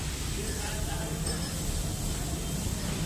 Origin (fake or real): real